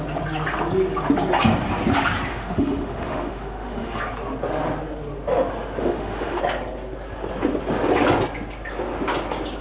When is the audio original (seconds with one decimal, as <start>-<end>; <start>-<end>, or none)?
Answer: 0.0-2.3; 4.0-5.8; 6.4-9.6